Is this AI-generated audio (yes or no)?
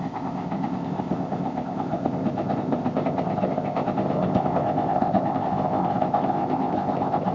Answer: yes